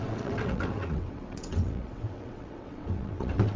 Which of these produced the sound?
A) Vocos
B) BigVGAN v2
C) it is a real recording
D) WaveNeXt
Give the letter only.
D